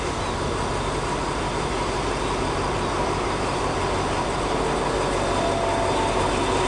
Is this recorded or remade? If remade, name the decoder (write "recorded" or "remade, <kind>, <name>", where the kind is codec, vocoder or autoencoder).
recorded